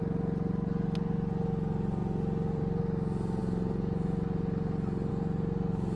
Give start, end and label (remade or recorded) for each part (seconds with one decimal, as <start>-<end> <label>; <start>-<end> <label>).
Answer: 0.0-2.0 recorded; 2.0-2.8 remade; 2.8-6.0 recorded